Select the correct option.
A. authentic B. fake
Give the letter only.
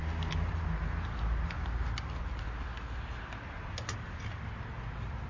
A